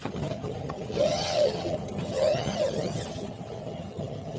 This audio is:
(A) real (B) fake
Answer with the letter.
B